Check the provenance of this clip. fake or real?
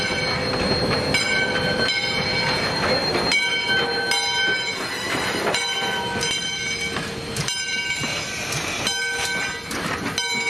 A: real